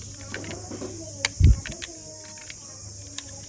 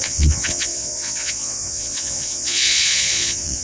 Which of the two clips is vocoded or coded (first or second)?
second